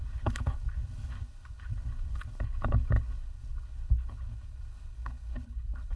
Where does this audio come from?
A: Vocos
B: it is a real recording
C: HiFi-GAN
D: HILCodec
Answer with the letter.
D